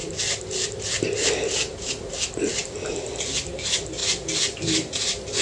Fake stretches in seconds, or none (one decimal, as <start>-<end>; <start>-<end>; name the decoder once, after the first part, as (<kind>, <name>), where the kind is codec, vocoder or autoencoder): 2.5-3.1 (vocoder, BigVGAN v2)